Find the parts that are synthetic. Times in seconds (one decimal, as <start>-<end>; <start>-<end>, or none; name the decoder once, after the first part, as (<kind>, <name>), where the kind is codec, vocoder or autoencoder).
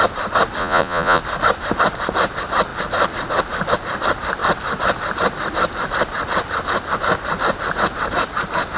0.6-1.2 (vocoder, Vocos)